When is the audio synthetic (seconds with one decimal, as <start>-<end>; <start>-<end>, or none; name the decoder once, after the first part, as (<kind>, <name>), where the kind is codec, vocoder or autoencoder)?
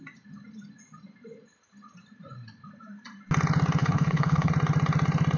3.8-4.5 (codec, HILCodec)